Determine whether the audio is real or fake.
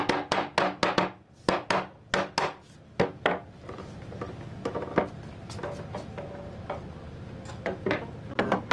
real